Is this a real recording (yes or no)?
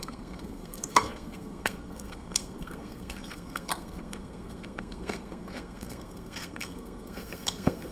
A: no